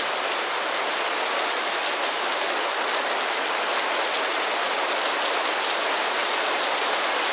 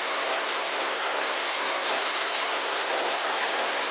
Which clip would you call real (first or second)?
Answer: first